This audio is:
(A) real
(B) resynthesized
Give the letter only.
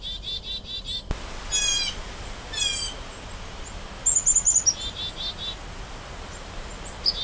A